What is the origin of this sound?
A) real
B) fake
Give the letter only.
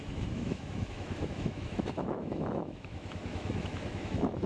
B